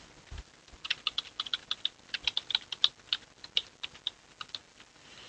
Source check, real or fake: real